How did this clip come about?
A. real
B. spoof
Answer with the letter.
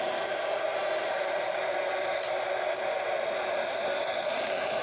A